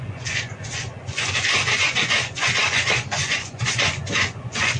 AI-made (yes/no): yes